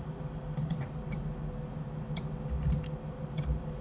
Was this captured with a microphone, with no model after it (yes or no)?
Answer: yes